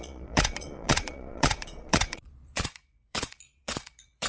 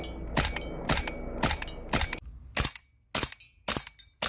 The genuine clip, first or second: second